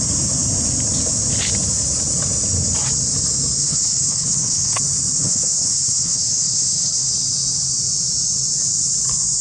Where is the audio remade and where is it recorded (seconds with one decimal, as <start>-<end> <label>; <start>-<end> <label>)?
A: 0.0-3.6 recorded; 3.6-4.8 remade; 4.8-5.2 recorded; 5.2-7.1 remade; 7.1-9.4 recorded